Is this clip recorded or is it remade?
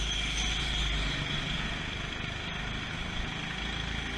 recorded